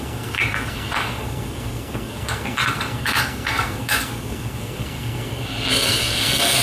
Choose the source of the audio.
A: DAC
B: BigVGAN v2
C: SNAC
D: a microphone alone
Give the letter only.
C